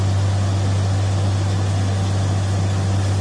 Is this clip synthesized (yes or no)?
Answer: no